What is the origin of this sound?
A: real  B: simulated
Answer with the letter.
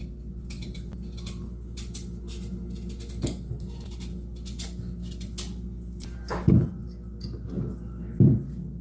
A